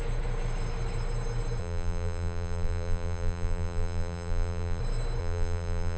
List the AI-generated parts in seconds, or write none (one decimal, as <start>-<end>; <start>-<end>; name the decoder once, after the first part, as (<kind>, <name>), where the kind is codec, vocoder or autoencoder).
1.6-4.8 (vocoder, BigVGAN v2); 5.2-6.0